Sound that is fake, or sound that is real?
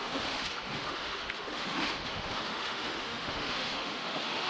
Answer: fake